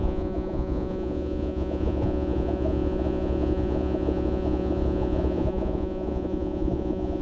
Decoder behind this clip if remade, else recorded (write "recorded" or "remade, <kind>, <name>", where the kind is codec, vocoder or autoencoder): remade, vocoder, Vocos